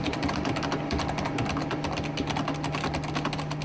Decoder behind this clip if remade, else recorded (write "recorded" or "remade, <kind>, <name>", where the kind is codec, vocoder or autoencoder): recorded